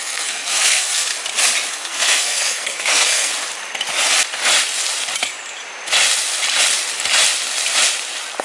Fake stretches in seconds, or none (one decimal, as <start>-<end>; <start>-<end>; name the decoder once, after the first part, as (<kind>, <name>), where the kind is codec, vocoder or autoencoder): 0.0-1.1 (codec, SNAC); 1.7-3.3